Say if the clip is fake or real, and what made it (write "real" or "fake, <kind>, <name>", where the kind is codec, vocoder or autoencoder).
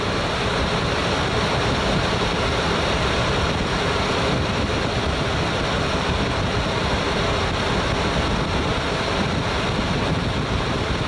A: real